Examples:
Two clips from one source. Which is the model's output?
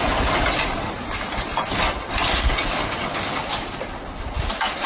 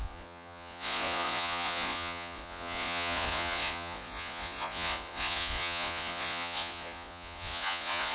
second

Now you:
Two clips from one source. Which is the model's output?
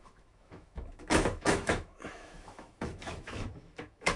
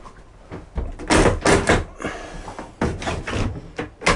first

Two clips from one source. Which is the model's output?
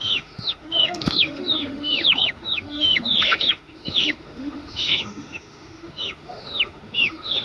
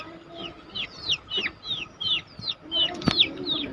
first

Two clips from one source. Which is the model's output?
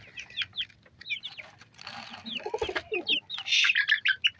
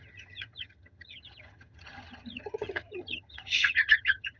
second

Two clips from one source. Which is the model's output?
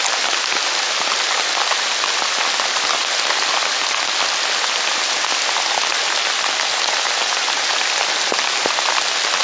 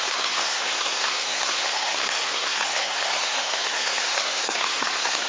second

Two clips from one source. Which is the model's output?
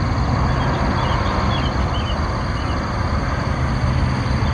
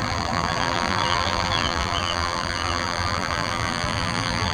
second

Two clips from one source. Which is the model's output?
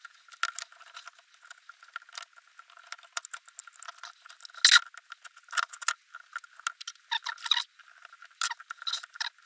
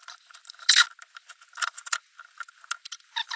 second